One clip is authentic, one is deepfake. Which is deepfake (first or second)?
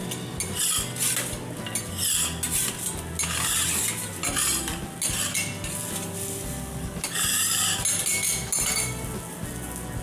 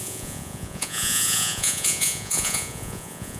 second